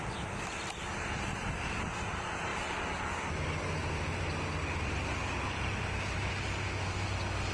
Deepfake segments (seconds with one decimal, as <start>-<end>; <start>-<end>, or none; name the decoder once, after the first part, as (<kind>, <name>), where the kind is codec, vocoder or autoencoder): none